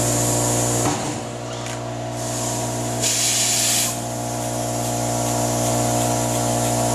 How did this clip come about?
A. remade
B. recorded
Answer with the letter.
B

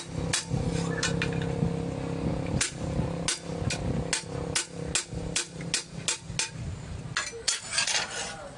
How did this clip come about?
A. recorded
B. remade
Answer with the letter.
A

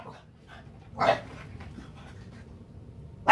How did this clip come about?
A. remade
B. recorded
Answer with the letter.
B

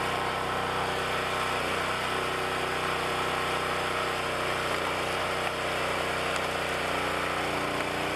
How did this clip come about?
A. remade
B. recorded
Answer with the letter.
B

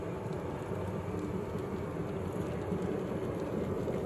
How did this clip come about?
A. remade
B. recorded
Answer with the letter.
B